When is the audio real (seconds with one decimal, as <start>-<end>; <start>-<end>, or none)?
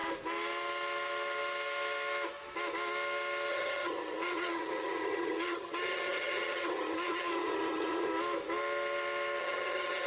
0.0-3.5; 8.1-9.4